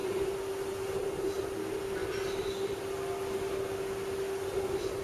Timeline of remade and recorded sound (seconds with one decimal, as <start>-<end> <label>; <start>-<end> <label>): 0.0-5.0 recorded